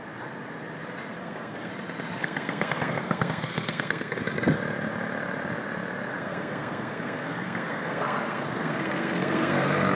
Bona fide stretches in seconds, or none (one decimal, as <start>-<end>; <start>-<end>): 0.0-1.2; 1.7-2.2; 4.2-6.1

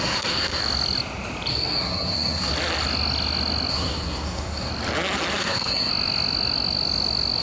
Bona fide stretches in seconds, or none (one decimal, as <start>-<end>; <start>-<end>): 0.6-1.5; 2.5-3.7; 4.7-5.4; 5.9-7.4